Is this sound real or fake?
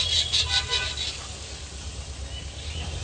real